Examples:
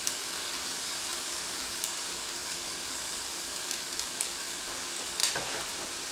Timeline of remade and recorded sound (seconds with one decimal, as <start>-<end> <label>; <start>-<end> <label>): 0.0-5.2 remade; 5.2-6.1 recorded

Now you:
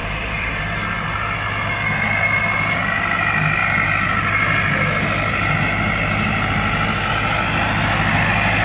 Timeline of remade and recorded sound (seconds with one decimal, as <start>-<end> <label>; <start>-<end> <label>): 0.0-0.6 remade; 0.6-8.6 recorded

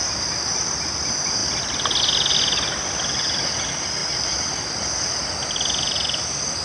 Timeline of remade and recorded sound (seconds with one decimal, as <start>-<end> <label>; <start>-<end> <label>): 0.0-6.6 recorded